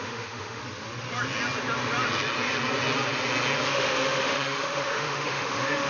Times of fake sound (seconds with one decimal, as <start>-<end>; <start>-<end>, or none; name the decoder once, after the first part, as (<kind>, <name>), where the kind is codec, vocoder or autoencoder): 0.0-0.6 (autoencoder, DAC-VAE); 3.7-5.9